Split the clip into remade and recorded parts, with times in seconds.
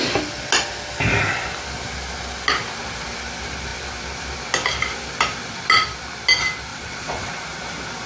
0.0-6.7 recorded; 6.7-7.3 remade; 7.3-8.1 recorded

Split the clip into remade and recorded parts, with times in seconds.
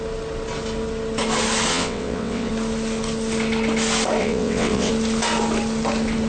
0.0-1.7 recorded; 1.7-2.5 remade; 2.5-4.2 recorded; 4.2-4.9 remade; 4.9-6.3 recorded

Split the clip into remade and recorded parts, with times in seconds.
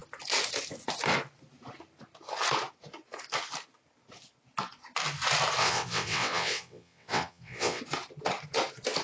0.0-5.6 recorded; 5.6-7.8 remade; 7.8-9.0 recorded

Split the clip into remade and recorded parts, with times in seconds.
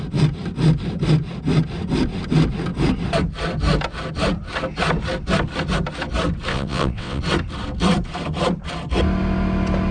0.0-6.5 recorded; 6.5-7.2 remade; 7.2-9.9 recorded